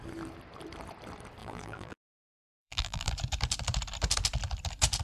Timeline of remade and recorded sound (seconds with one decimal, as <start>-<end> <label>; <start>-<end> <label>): 0.0-1.4 recorded; 1.4-3.1 remade; 3.1-5.0 recorded